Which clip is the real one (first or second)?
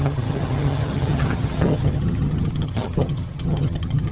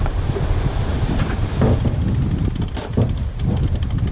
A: second